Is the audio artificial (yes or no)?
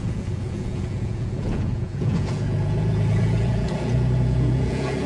yes